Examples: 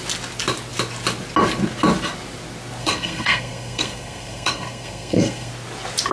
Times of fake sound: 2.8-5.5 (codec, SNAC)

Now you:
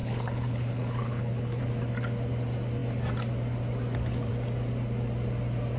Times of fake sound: 0.0-1.6 (codec, HILCodec)

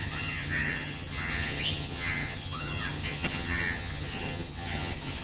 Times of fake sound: 0.0-5.2 (vocoder, HiFi-GAN)

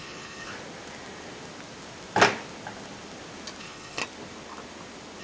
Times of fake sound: 0.0-0.5 (codec, HILCodec); 3.6-4.0

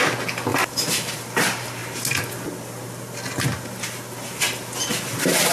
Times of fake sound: 0.5-1.2 (vocoder, BigVGAN v2)